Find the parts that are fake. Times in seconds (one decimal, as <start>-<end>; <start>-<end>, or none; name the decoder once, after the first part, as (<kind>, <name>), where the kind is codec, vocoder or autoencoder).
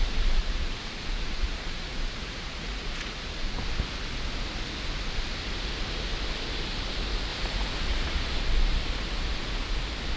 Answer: 0.4-3.6 (vocoder, Vocos); 7.3-8.4